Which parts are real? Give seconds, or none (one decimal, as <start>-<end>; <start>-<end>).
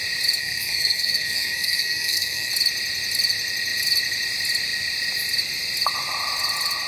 0.0-0.4; 2.5-6.9